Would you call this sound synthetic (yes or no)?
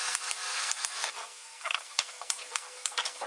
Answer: yes